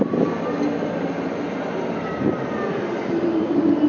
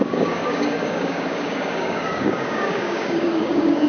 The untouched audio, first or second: first